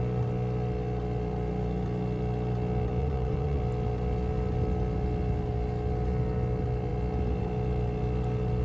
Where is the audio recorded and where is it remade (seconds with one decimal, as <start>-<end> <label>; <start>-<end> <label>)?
0.0-3.0 recorded; 3.0-3.6 remade; 3.6-8.6 recorded

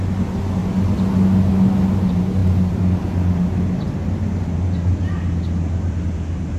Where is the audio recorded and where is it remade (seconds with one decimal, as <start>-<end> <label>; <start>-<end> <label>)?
0.0-6.6 recorded

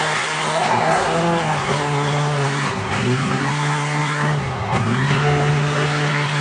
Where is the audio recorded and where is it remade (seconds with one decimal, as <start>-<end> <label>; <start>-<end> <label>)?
0.0-6.4 remade

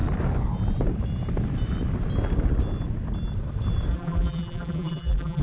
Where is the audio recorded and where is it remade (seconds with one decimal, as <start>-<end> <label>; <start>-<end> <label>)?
0.0-3.9 recorded; 3.9-5.4 remade